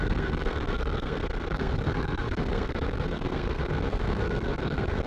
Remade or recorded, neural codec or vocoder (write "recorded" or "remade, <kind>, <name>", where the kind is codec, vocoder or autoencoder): remade, codec, SNAC